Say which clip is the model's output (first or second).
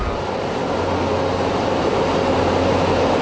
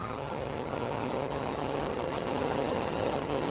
second